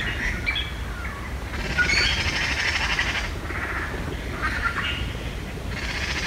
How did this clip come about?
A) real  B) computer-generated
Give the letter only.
A